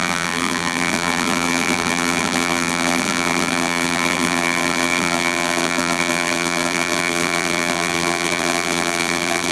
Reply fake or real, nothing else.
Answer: fake